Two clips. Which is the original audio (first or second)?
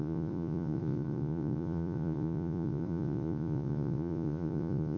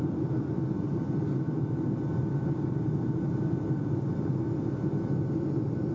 second